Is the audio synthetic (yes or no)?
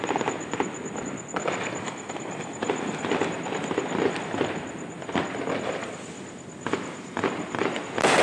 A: no